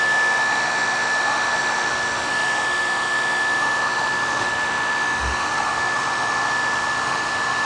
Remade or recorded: remade